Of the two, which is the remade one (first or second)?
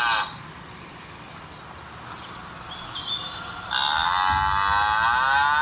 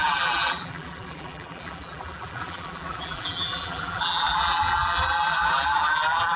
second